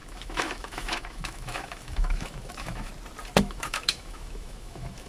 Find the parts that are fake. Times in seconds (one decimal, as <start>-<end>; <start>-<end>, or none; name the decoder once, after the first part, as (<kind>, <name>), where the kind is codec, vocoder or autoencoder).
0.0-2.9 (autoencoder, DAC-VAE); 3.4-5.1